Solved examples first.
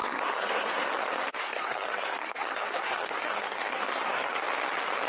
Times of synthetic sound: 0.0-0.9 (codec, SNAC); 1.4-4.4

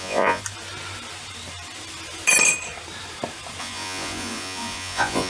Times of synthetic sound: 0.0-0.4 (vocoder, Vocos); 3.6-5.3

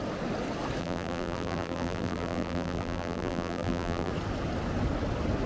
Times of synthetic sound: 0.8-4.1 (vocoder, BigVGAN v2)

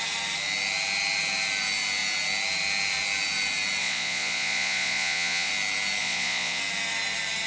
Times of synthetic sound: 3.8-5.5 (vocoder, Vocos); 6.0-6.6

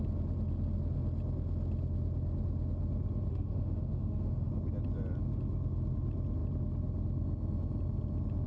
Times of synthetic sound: 3.3-4.5 (autoencoder, DAC-VAE)

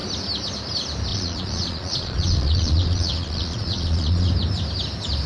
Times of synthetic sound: 1.1-4.3 (vocoder, Vocos)